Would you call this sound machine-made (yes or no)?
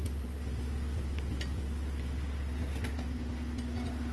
no